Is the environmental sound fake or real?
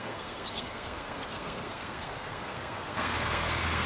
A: fake